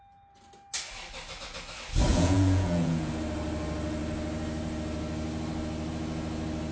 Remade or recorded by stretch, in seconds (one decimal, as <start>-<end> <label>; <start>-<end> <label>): 0.0-2.1 recorded; 2.1-3.1 remade; 3.1-6.7 recorded